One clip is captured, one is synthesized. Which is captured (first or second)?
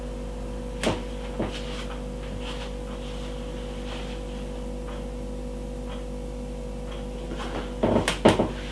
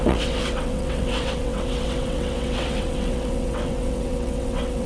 first